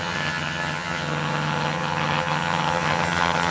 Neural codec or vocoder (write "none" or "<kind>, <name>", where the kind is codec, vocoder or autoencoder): vocoder, HiFi-GAN